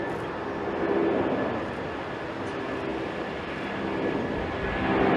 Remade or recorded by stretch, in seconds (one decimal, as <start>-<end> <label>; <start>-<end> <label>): 0.0-2.9 recorded; 2.9-3.5 remade; 3.5-5.2 recorded